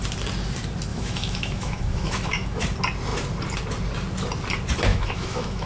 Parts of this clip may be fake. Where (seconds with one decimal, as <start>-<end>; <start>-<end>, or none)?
0.9-2.6; 4.9-5.7